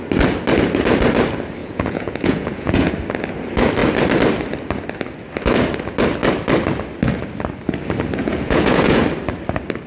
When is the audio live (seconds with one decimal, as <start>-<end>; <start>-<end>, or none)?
0.0-1.6; 2.9-8.2; 9.0-9.9